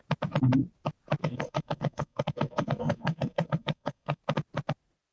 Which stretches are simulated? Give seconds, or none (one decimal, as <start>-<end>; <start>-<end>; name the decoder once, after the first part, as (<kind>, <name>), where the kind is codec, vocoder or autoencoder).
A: 1.2-4.2 (codec, SNAC)